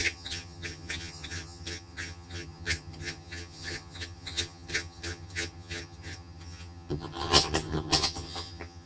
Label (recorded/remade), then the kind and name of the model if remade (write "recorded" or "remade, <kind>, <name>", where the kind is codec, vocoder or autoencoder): remade, vocoder, HiFi-GAN